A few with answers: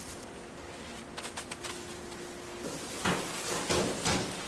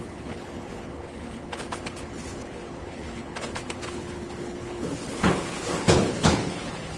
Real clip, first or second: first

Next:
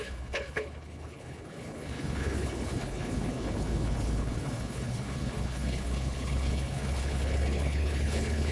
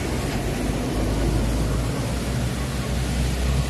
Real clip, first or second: second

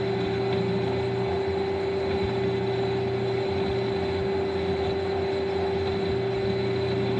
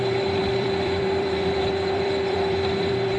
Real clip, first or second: first